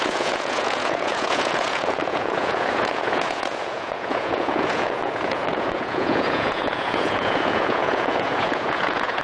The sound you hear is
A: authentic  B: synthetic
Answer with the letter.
B